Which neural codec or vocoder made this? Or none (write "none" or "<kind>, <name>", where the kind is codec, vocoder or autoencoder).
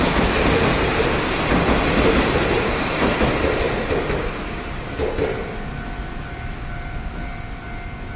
none